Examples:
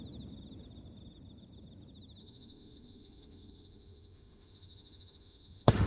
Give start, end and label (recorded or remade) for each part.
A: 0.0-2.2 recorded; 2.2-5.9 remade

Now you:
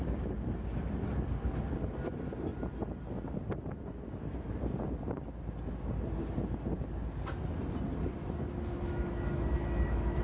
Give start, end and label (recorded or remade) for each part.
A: 0.0-8.2 recorded; 8.2-10.2 remade

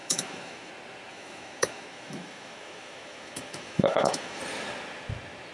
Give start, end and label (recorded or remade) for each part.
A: 0.0-0.7 remade; 0.7-1.1 recorded; 1.1-4.4 remade; 4.4-5.5 recorded